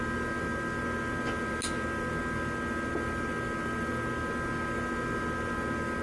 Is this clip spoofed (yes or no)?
no